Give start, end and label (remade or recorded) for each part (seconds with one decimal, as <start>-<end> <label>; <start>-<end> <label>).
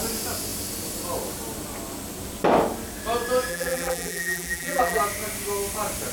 0.0-3.5 recorded; 3.5-5.0 remade; 5.0-6.1 recorded